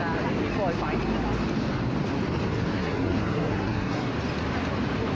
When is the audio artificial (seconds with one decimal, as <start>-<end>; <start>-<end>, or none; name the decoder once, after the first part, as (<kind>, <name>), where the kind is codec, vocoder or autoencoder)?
2.7-4.1 (codec, SNAC)